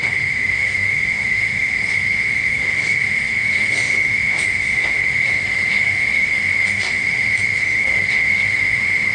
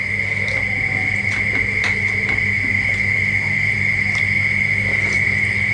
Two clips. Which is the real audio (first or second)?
second